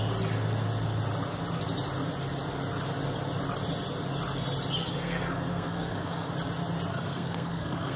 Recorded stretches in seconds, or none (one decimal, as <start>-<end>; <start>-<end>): 0.0-4.8; 6.3-6.9